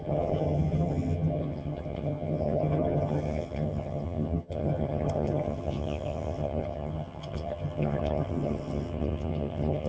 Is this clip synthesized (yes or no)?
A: yes